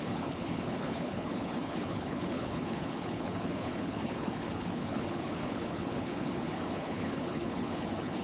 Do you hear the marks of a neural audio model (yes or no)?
yes